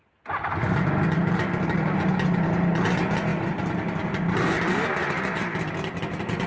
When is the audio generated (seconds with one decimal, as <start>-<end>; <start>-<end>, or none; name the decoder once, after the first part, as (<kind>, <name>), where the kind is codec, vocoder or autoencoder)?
3.3-6.5 (vocoder, BigVGAN v2)

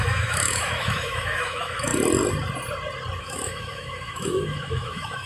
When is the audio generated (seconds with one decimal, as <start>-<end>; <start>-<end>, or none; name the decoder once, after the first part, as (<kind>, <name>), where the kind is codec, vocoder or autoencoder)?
0.0-1.9 (autoencoder, DAC-VAE); 3.2-5.3

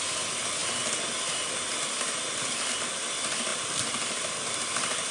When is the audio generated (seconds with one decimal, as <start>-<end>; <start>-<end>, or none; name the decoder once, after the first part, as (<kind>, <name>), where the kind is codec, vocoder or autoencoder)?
0.6-2.9 (vocoder, BigVGAN v2); 3.5-5.1